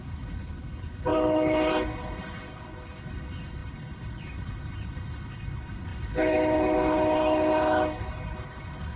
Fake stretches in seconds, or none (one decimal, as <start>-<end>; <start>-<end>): 0.0-9.0